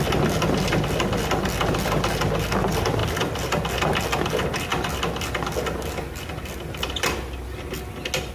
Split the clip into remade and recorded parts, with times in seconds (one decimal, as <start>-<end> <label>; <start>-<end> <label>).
0.0-8.3 recorded